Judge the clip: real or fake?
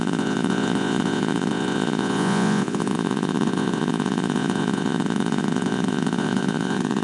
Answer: fake